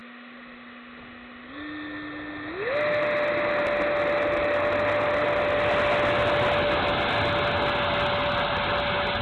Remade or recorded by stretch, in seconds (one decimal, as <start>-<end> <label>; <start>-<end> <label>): 0.0-9.2 recorded